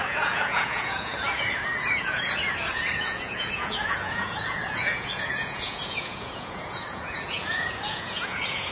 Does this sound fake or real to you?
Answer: fake